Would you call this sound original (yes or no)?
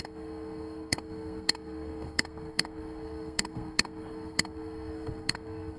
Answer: no